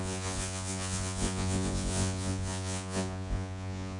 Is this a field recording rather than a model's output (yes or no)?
no